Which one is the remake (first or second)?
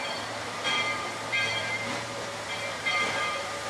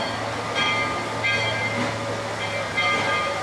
first